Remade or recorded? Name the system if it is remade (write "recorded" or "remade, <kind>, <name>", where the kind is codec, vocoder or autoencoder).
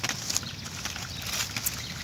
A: recorded